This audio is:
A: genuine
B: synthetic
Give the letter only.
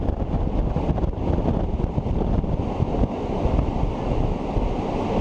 A